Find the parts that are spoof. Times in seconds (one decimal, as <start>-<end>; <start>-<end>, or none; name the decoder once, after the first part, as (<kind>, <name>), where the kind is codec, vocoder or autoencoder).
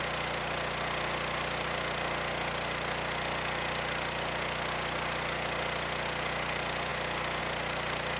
none